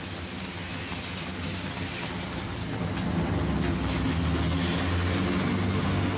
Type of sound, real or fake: real